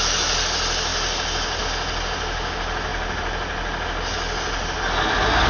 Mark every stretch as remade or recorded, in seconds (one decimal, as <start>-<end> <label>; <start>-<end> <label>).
0.0-5.5 recorded